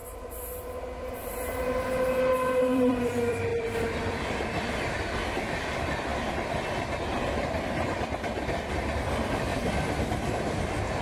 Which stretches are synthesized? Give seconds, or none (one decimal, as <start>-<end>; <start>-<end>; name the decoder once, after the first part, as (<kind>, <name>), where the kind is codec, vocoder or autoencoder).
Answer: 2.3-11.0 (vocoder, BigVGAN v2)